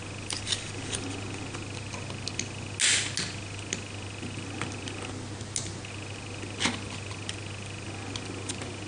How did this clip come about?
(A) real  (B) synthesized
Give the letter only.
A